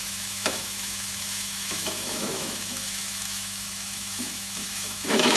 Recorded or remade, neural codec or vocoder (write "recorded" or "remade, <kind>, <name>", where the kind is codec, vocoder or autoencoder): remade, autoencoder, DAC-VAE